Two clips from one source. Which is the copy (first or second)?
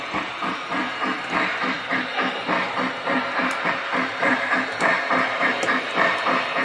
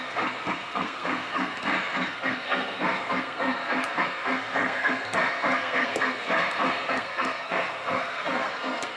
second